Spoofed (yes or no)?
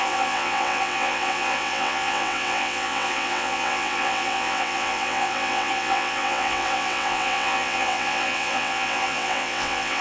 yes